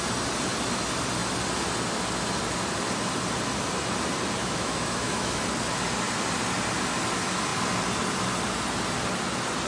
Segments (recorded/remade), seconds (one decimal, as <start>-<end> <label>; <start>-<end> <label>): 0.0-4.4 recorded; 4.4-5.4 remade; 5.4-9.7 recorded